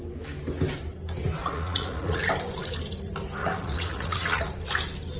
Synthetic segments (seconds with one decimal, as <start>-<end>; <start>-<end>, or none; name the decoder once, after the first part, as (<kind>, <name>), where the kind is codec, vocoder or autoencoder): 1.4-2.3 (vocoder, Vocos); 3.4-4.4